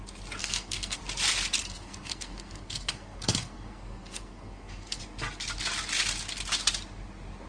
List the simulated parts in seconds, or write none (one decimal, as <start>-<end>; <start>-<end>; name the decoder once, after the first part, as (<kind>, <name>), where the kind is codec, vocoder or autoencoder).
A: 0.4-1.0 (codec, SNAC); 1.6-5.0

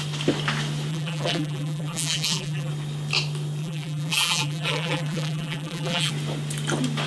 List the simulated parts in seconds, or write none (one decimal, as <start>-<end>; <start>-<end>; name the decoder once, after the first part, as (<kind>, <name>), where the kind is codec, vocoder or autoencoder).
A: 0.9-2.7 (vocoder, BigVGAN v2); 3.6-6.1